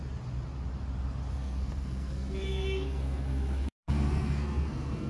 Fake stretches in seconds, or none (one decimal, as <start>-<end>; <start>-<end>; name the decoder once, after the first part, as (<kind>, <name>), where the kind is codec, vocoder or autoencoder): 1.3-5.1 (codec, SNAC)